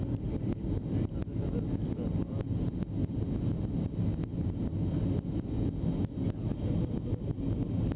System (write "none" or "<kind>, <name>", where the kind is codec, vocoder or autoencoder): none